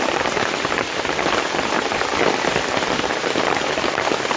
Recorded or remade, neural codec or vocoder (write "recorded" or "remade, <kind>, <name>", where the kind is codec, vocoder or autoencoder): recorded